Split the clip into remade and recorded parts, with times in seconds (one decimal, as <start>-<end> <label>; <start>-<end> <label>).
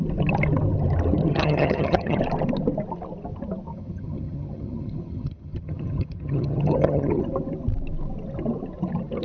0.0-1.3 recorded; 1.3-2.2 remade; 2.2-3.7 recorded; 3.7-7.2 remade; 7.2-9.2 recorded